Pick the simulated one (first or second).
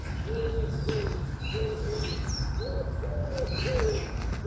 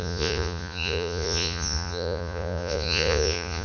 second